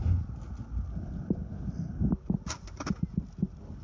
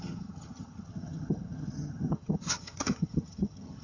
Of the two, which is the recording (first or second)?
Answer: first